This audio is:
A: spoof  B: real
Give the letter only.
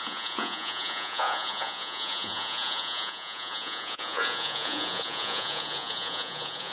A